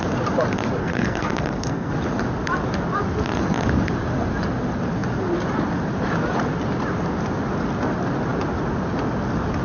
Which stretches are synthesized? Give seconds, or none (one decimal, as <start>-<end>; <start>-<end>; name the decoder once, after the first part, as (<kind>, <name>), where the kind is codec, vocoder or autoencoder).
0.8-1.9 (codec, SNAC)